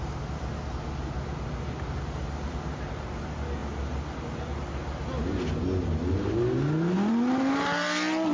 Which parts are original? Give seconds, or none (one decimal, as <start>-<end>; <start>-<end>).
0.0-8.3